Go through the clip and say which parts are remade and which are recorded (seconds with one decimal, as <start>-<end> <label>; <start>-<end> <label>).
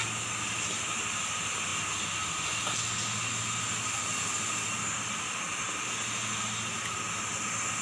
0.0-7.8 recorded